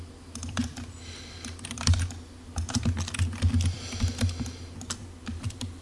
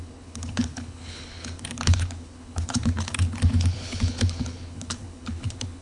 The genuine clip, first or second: first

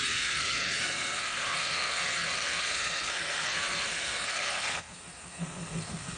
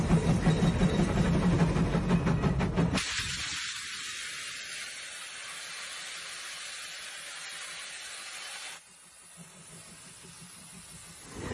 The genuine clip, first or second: second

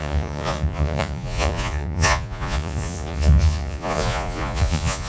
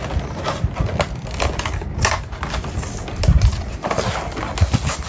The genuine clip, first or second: second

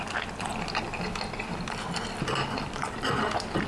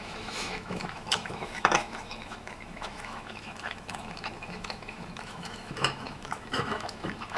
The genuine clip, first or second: first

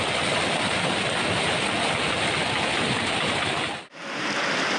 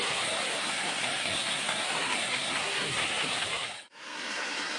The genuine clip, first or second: first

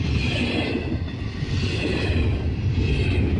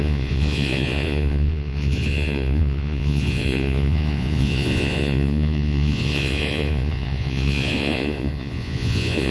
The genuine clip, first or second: first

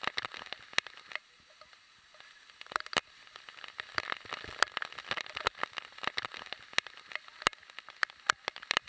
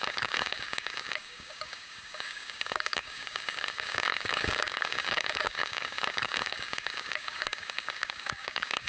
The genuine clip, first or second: first